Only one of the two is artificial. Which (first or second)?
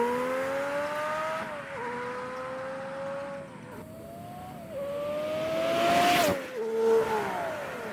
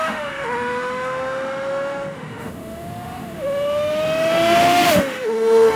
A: second